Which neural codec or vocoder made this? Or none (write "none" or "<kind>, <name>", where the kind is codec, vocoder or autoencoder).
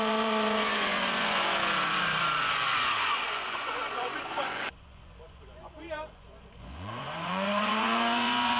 vocoder, Vocos